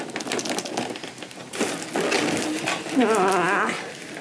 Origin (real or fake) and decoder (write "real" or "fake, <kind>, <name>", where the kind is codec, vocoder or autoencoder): real